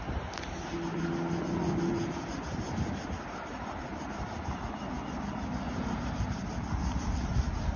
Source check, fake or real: real